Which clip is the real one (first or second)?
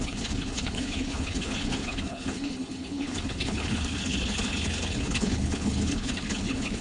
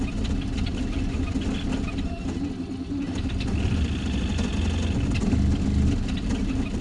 second